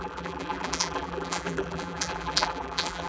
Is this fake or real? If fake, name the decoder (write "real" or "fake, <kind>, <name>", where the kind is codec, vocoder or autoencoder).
fake, vocoder, BigVGAN v2